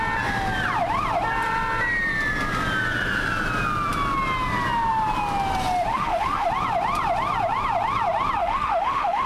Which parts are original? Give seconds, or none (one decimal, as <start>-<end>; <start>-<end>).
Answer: 0.0-5.9; 6.5-8.4